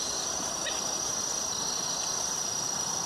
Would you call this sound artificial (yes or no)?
no